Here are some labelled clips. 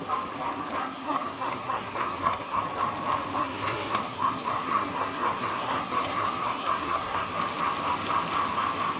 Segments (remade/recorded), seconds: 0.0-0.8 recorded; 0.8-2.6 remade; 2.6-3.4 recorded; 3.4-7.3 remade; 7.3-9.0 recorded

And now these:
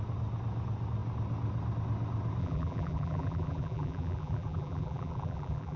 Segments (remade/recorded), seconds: 0.0-2.4 recorded; 2.4-5.8 remade

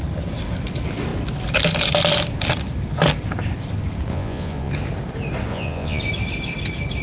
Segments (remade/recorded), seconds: 0.0-4.1 recorded; 4.1-4.7 remade; 4.7-5.5 recorded; 5.5-6.0 remade; 6.0-7.0 recorded

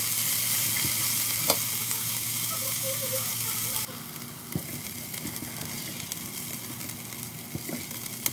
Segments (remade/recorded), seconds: 0.0-1.8 recorded; 1.8-3.3 remade; 3.3-8.3 recorded

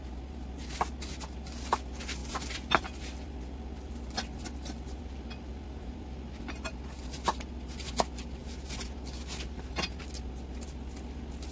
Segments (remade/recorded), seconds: 0.0-2.2 recorded; 2.2-6.7 remade; 6.7-11.5 recorded